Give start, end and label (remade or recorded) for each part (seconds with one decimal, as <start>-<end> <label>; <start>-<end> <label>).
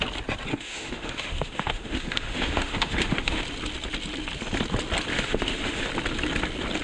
0.0-0.5 recorded; 0.5-3.4 remade; 3.4-5.1 recorded; 5.1-5.9 remade; 5.9-6.8 recorded